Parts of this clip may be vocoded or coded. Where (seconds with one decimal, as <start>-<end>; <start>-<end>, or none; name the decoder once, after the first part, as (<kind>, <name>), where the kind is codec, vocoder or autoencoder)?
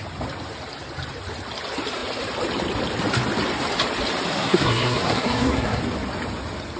4.3-5.8 (codec, SNAC)